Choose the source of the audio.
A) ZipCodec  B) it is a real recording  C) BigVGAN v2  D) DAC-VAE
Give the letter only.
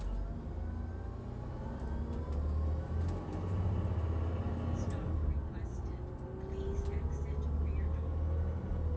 B